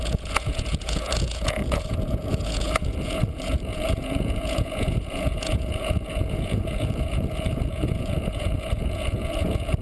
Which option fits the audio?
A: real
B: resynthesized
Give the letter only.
B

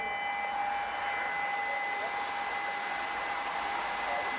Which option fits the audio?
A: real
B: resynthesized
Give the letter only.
A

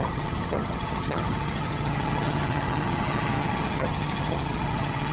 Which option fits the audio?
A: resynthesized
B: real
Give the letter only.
A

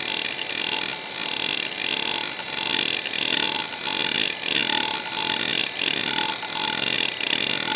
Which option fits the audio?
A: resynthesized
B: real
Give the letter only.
B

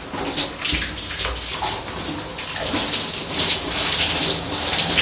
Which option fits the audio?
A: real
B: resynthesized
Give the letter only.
A